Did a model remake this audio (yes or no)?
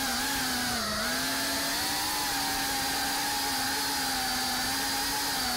no